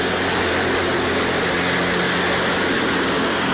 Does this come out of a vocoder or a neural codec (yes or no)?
no